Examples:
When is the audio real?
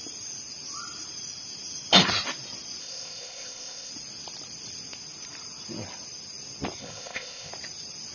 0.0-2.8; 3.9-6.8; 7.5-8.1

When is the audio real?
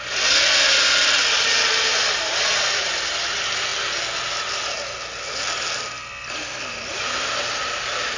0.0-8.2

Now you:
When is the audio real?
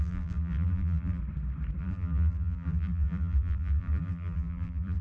1.2-1.8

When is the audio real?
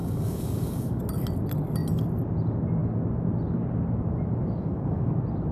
1.0-4.4; 5.1-5.5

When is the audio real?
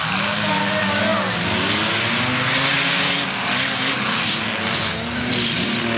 0.0-6.0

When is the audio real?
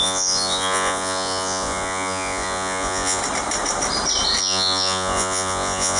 3.2-4.4